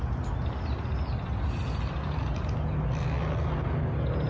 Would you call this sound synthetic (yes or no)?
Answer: no